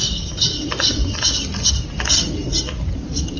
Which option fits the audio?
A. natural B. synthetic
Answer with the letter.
A